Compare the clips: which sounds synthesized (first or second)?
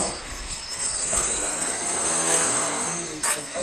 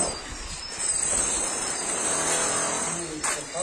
first